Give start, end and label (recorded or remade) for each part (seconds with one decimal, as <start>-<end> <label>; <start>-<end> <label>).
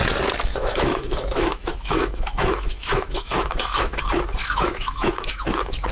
0.0-0.5 recorded; 0.5-4.0 remade; 4.0-4.4 recorded; 4.4-5.9 remade